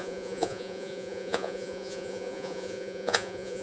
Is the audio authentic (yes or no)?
no